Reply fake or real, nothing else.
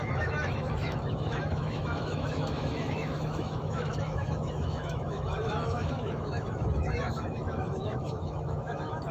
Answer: fake